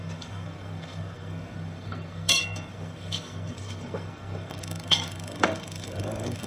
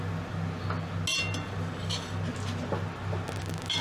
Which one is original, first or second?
second